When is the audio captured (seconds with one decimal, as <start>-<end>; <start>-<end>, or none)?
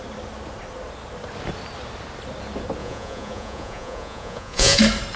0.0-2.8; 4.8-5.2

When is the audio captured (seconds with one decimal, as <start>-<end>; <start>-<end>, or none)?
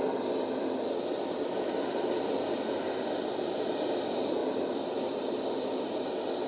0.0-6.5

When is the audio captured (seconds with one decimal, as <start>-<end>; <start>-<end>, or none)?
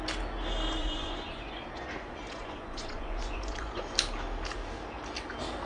0.0-0.8; 3.8-5.7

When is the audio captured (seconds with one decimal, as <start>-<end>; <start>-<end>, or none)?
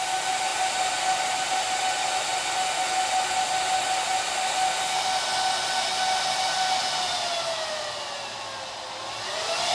0.0-9.7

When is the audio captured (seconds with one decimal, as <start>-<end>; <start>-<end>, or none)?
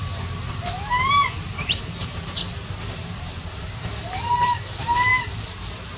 none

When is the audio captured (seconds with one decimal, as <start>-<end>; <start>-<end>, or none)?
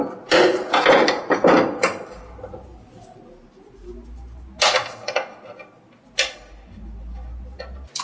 0.0-8.0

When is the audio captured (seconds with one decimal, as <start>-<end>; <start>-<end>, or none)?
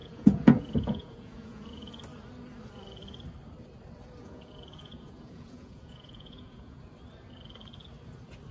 1.9-4.2; 6.8-8.5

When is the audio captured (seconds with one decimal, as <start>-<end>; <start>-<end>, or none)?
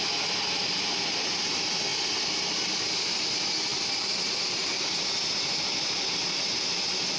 0.0-3.7; 4.8-7.2